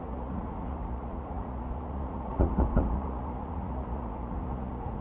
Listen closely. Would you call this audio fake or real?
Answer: fake